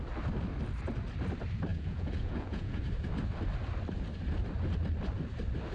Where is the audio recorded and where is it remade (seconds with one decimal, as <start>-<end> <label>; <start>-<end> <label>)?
0.0-1.7 recorded; 1.7-2.8 remade; 2.8-5.7 recorded